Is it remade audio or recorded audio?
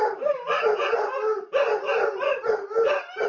recorded